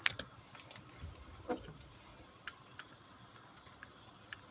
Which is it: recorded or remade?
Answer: recorded